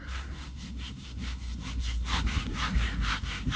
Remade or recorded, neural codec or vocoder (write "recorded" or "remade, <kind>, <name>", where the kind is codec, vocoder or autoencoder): remade, codec, SNAC